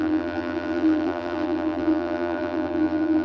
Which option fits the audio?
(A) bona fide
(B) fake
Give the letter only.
B